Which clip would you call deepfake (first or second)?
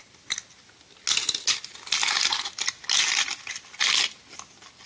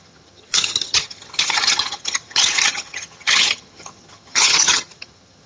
second